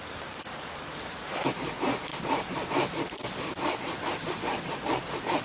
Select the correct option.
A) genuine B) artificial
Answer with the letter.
A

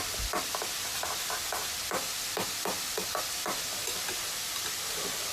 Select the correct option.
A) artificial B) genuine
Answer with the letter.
A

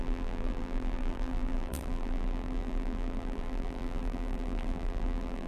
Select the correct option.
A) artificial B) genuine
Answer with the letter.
A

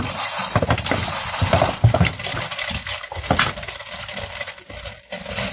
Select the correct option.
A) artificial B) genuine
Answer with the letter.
A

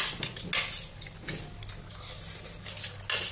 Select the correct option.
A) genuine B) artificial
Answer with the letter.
A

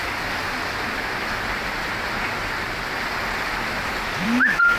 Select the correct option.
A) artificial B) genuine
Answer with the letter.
A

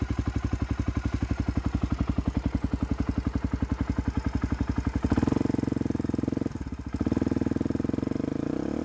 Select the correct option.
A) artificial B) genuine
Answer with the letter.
B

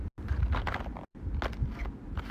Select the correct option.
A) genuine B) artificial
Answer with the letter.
A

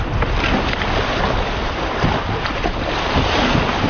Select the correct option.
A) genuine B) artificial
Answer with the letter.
A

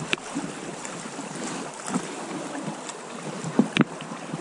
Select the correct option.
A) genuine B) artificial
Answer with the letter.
B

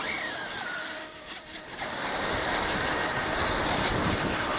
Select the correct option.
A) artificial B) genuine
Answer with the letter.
A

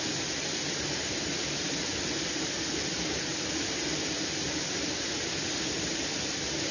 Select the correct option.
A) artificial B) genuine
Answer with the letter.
B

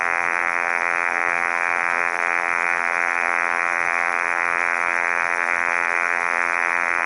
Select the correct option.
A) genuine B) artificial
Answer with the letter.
B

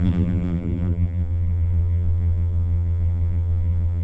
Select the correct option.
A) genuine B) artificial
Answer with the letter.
B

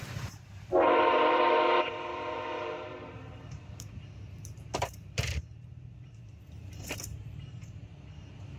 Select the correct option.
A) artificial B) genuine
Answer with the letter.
A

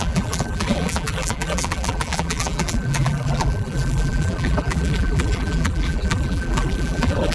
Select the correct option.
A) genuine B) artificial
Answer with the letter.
B